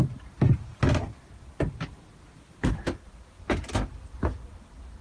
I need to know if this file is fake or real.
real